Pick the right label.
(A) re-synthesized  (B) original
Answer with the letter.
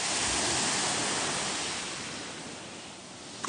B